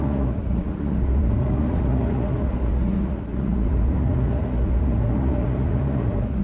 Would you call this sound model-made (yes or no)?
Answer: yes